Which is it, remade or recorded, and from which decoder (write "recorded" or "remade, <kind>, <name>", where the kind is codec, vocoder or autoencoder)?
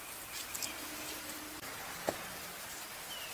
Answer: recorded